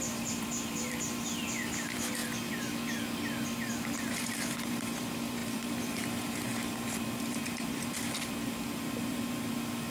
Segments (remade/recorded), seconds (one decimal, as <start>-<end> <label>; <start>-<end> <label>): 0.0-2.2 remade; 2.2-4.1 recorded; 4.1-9.9 remade